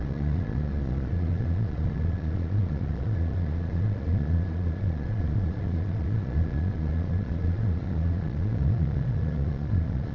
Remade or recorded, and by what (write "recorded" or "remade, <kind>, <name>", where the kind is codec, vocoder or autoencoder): remade, vocoder, Vocos